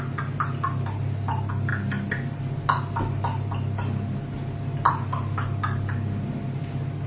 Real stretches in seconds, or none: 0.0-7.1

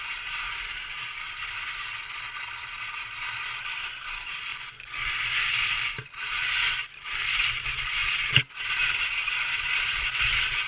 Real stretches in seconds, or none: 0.0-4.5; 5.1-10.7

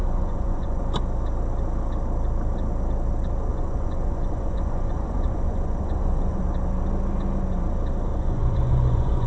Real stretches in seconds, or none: 0.8-3.5; 6.4-8.1

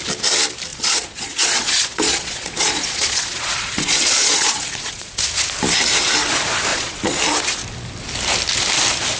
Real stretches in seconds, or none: 0.0-0.7; 5.2-6.7; 7.2-9.2

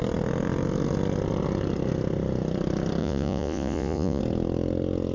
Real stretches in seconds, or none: 0.0-3.0; 4.2-5.1

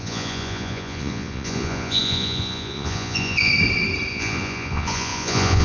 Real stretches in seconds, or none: 3.5-4.1

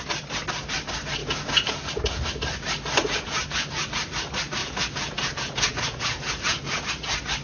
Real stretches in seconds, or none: 0.0-1.2; 2.2-3.0; 4.0-4.6; 6.9-7.4